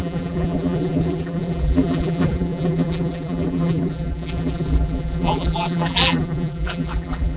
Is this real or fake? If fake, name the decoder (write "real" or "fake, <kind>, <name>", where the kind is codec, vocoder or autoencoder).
fake, vocoder, BigVGAN v2